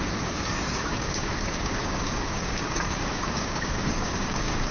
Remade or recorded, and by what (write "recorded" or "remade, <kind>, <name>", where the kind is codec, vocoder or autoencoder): remade, codec, DAC